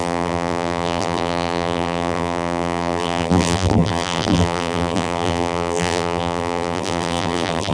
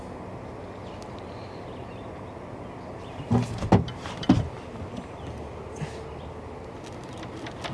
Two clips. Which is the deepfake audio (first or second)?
first